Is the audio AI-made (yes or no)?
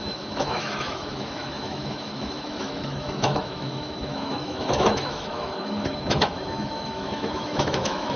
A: yes